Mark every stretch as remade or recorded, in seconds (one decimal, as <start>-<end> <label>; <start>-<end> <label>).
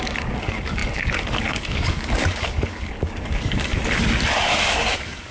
0.0-3.7 remade; 3.7-4.4 recorded; 4.4-5.3 remade